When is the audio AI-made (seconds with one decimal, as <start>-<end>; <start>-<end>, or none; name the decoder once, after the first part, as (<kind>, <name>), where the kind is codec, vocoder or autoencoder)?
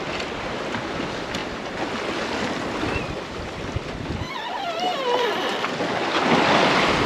none